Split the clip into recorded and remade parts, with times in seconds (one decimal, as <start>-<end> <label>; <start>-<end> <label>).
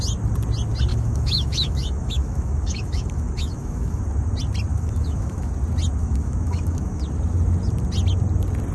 0.0-0.9 recorded; 0.9-4.0 remade; 4.0-4.7 recorded; 4.7-5.5 remade; 5.5-6.0 recorded; 6.0-7.0 remade; 7.0-8.7 recorded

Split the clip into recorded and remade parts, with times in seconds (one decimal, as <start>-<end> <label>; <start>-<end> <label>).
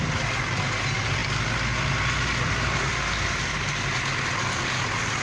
0.0-5.2 recorded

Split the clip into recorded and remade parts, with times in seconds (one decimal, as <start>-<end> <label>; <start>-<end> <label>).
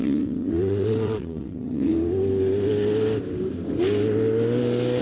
0.0-1.9 remade; 1.9-5.0 recorded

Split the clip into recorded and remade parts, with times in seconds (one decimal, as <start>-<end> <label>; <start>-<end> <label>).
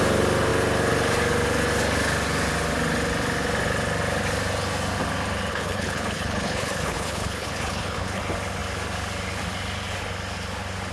0.0-5.5 recorded; 5.5-8.2 remade; 8.2-10.9 recorded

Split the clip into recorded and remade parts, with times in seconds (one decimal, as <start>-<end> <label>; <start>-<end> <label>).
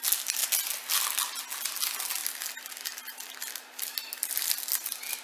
0.0-5.2 recorded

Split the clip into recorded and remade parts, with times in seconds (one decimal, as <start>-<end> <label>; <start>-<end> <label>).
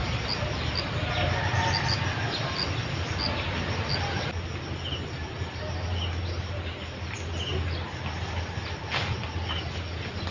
0.0-10.3 recorded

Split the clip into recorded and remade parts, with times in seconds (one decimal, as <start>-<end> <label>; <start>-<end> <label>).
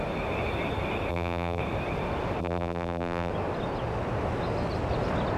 0.0-1.1 recorded; 1.1-1.6 remade; 1.6-2.4 recorded; 2.4-3.3 remade; 3.3-5.4 recorded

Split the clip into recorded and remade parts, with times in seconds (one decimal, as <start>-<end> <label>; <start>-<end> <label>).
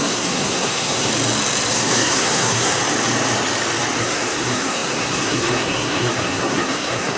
0.0-1.1 remade; 1.1-1.7 recorded; 1.7-2.8 remade; 2.8-4.0 recorded; 4.0-7.2 remade